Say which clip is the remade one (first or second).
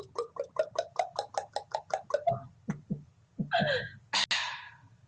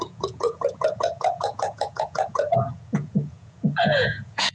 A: second